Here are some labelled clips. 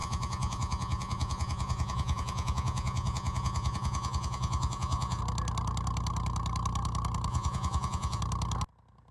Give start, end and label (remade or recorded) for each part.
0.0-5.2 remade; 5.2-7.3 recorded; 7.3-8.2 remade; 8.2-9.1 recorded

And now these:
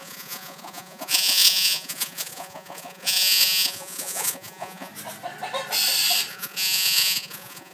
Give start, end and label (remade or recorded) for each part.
0.0-4.9 remade; 4.9-6.3 recorded; 6.3-7.7 remade

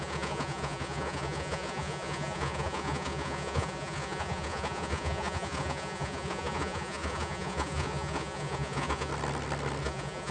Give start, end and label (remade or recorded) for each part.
0.0-9.1 remade; 9.1-9.8 recorded; 9.8-10.3 remade

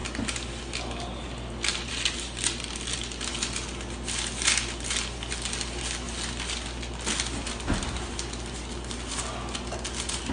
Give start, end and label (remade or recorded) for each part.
0.0-10.3 recorded

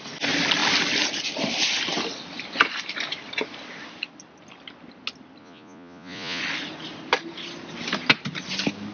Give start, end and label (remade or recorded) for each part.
0.0-5.4 recorded; 5.4-6.4 remade; 6.4-8.9 recorded

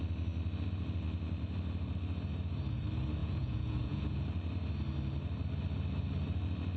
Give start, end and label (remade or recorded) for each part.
0.0-3.2 recorded; 3.2-4.2 remade; 4.2-6.8 recorded

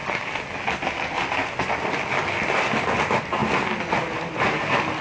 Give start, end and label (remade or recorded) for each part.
0.0-5.0 recorded

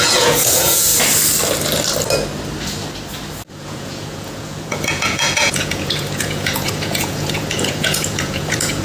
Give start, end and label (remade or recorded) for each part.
0.0-0.9 remade; 0.9-3.5 recorded; 3.5-8.8 remade